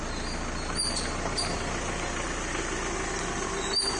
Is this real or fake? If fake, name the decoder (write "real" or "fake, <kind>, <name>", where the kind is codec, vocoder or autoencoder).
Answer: real